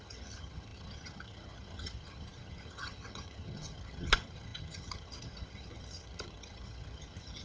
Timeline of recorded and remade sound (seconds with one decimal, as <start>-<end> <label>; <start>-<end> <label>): 0.0-7.4 remade